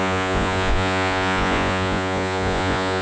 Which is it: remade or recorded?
remade